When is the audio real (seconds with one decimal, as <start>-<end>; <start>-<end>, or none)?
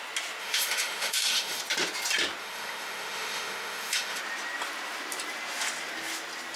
0.0-0.4; 1.6-2.4; 4.2-6.6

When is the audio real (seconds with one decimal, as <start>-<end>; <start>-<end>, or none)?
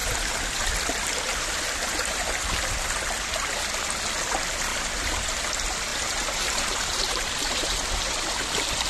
0.0-4.7; 5.4-5.9; 8.3-8.9